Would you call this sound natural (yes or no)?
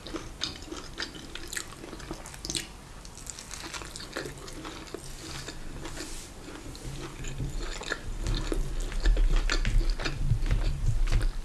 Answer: yes